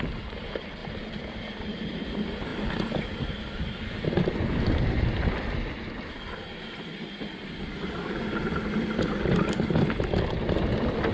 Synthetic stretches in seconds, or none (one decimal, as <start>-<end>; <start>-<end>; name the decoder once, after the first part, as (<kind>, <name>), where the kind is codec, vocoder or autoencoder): none